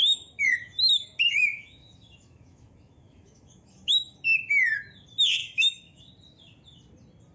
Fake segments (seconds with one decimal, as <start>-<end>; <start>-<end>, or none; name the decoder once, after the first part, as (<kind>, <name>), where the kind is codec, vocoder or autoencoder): 0.0-4.4 (autoencoder, DAC-VAE); 5.4-6.0